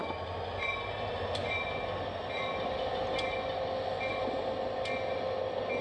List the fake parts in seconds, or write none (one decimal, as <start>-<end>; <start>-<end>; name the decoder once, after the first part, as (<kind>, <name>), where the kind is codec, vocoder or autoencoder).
none

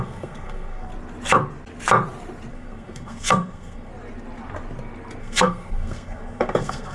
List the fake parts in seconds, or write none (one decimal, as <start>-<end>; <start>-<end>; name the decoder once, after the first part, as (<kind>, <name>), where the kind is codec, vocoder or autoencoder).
0.0-0.9 (codec, SNAC); 2.5-3.9; 5.2-6.9

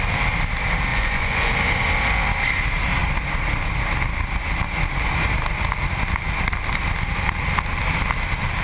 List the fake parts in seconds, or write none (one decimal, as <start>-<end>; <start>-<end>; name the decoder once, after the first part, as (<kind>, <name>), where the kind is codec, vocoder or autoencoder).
0.9-1.5 (vocoder, Vocos)